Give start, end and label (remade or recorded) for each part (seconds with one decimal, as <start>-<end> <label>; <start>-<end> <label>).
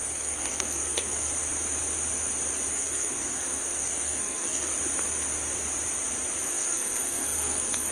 0.0-1.3 remade; 1.3-2.7 recorded; 2.7-4.7 remade; 4.7-6.5 recorded; 6.5-7.9 remade